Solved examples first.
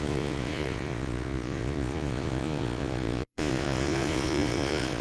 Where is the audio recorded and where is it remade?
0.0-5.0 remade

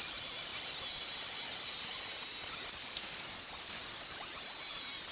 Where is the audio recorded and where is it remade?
0.0-5.1 recorded

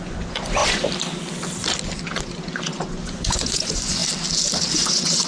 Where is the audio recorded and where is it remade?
0.0-0.6 remade; 0.6-2.2 recorded; 2.2-4.0 remade; 4.0-4.7 recorded; 4.7-5.3 remade